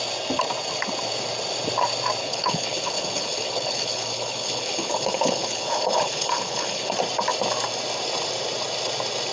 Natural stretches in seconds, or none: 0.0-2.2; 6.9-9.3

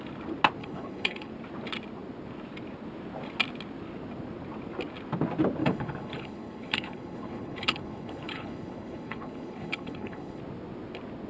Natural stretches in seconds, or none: 0.0-0.6; 1.3-5.6; 10.4-11.3

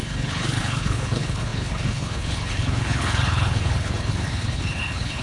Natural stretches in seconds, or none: none

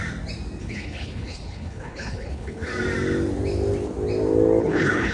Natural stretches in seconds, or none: 0.0-0.6; 2.7-4.6

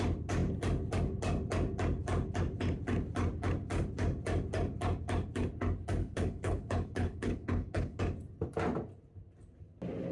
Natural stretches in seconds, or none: 0.0-6.0; 8.0-10.1